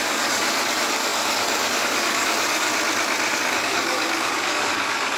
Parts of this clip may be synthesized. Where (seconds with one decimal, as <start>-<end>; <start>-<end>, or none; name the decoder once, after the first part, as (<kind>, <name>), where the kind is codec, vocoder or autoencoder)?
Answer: 0.0-2.7 (codec, DAC); 3.3-5.2